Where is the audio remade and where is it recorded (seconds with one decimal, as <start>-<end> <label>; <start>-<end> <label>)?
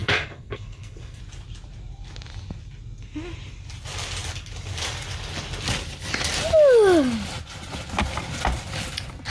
0.0-1.2 remade; 1.2-9.3 recorded